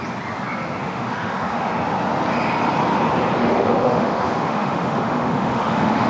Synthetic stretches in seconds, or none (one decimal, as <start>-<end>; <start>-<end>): 0.8-1.7; 3.4-6.1